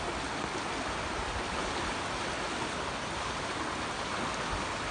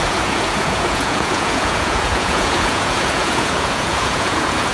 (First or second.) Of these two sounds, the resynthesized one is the second